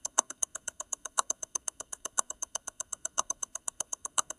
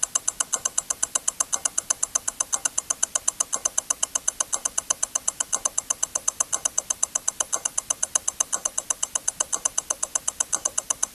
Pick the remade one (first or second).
first